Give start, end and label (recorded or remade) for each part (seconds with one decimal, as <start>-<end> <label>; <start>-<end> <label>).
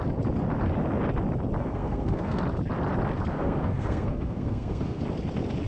0.0-1.6 recorded; 1.6-2.4 remade; 2.4-3.3 recorded; 3.3-5.0 remade; 5.0-5.7 recorded